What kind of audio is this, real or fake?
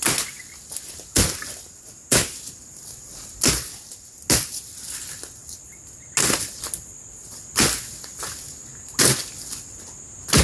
real